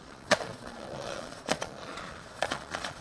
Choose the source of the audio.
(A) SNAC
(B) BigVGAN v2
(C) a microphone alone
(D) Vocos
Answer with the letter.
D